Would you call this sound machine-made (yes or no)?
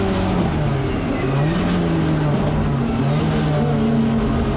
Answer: no